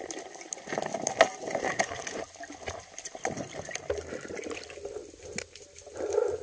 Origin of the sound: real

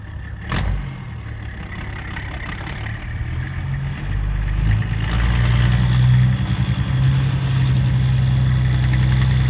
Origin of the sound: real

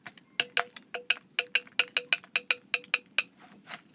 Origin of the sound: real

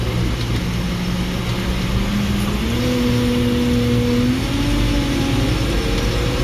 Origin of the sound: real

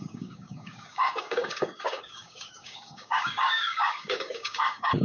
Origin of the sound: fake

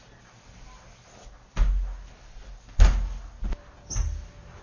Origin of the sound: real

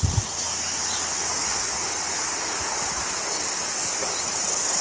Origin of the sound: real